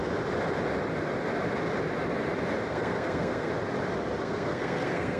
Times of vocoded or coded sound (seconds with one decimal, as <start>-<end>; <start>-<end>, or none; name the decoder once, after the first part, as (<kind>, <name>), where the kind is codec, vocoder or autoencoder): 2.7-3.5 (codec, SNAC); 4.2-5.2